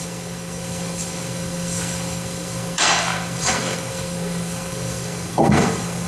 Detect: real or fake fake